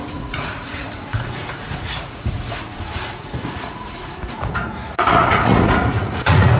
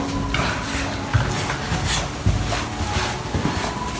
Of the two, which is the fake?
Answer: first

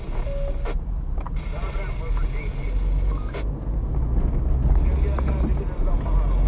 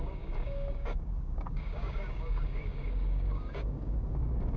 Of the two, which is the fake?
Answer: second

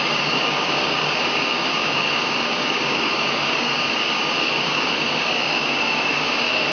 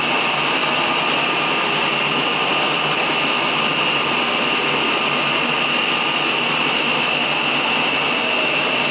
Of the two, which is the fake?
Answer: first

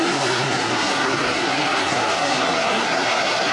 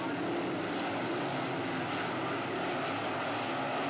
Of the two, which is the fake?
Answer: first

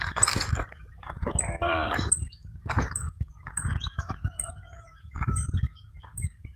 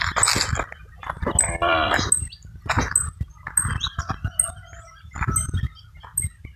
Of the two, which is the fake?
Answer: first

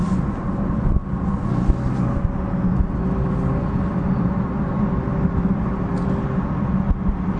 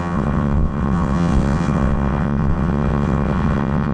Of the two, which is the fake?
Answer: second